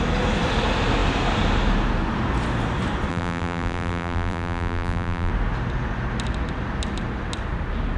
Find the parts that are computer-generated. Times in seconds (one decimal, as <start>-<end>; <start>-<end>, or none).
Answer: 3.1-5.3